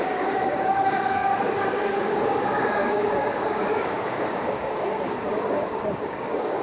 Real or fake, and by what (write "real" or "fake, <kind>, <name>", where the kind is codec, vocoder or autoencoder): fake, codec, DAC